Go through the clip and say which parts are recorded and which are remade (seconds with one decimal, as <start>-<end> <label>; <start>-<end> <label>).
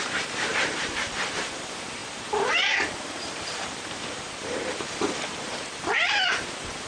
0.0-6.9 remade